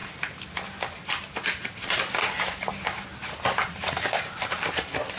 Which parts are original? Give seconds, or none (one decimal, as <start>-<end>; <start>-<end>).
0.0-5.2